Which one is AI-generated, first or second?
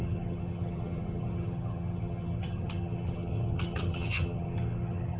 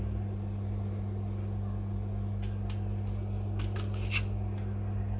first